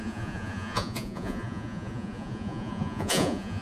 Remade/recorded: remade